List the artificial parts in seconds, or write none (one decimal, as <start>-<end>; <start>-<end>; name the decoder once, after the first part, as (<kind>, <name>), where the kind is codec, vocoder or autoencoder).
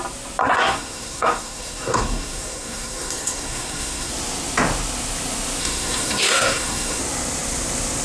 0.4-4.1 (codec, SNAC); 5.6-7.0